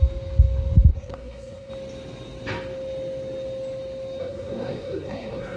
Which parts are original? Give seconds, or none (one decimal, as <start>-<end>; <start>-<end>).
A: 0.0-0.9; 1.7-4.2